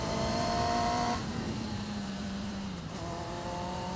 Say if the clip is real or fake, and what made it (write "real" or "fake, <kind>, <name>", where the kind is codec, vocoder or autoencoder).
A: fake, vocoder, BigVGAN v2